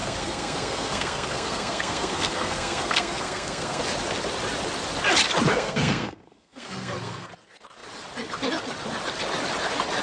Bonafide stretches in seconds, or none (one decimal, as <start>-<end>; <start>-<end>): 3.8-5.5; 7.3-10.0